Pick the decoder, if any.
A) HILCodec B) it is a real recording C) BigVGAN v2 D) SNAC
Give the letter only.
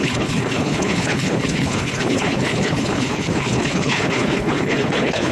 A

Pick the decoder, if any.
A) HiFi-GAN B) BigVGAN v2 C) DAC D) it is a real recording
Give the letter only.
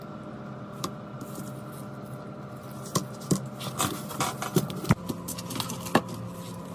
D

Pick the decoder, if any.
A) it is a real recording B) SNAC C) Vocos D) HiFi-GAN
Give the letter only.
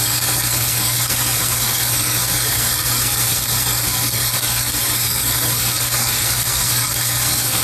B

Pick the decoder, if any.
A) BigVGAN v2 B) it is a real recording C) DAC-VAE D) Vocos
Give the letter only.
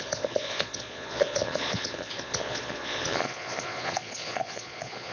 D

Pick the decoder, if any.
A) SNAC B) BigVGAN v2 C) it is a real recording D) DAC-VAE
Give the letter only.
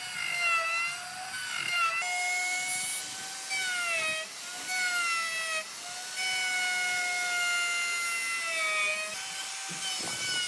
C